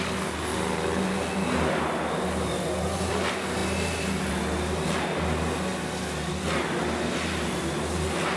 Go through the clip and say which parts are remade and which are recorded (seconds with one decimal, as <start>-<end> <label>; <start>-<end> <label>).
0.0-8.4 recorded